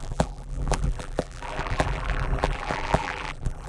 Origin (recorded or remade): remade